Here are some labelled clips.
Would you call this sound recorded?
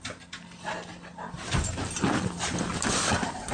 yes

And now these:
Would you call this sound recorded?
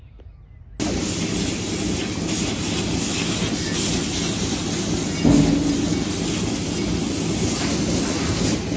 yes